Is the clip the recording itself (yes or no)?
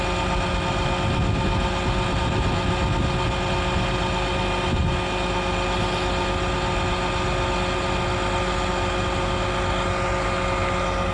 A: yes